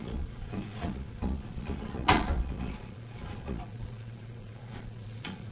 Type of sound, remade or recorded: remade